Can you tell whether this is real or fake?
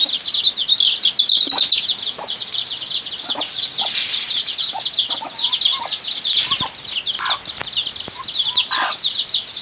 real